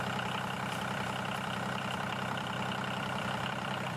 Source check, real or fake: fake